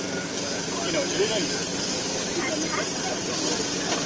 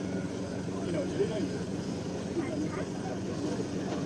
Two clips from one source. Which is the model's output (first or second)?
second